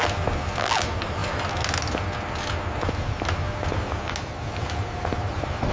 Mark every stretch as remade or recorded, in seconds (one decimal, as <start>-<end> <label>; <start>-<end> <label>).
0.0-5.7 recorded

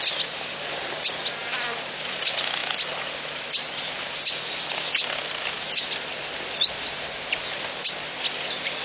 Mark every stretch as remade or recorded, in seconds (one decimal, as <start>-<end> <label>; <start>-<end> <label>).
0.0-8.8 recorded